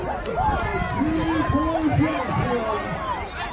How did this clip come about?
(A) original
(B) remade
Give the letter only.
A